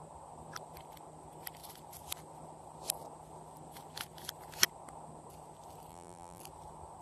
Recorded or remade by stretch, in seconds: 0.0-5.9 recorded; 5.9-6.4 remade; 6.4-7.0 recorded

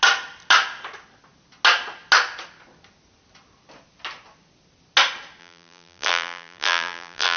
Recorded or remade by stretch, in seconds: 0.0-5.4 recorded; 5.4-7.4 remade

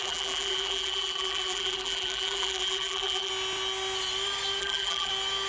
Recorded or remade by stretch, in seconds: 0.0-3.3 remade; 3.3-4.6 recorded; 4.6-5.1 remade; 5.1-5.5 recorded

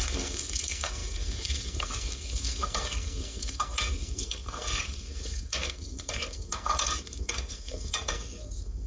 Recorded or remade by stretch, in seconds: 0.0-8.9 remade

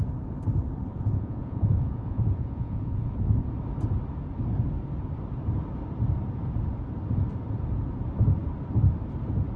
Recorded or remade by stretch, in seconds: 0.0-0.9 recorded; 0.9-3.4 remade; 3.4-9.6 recorded

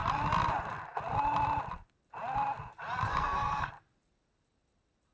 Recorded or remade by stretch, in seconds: 0.0-3.1 recorded; 3.1-3.7 remade; 3.7-5.1 recorded